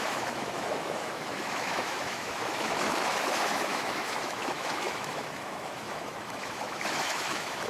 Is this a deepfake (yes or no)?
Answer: yes